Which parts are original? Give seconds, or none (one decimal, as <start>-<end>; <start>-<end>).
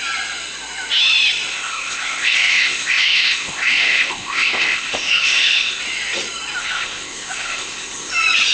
0.0-1.5; 5.8-6.6; 8.1-8.5